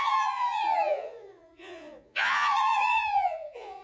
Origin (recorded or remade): remade